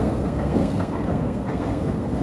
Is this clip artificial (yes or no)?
yes